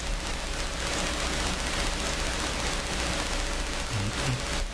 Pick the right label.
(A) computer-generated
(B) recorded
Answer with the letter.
B